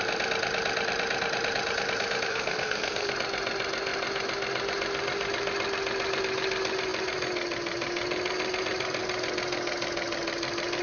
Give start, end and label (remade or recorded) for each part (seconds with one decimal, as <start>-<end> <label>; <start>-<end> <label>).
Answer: 0.0-2.3 recorded; 2.3-3.1 remade; 3.1-10.8 recorded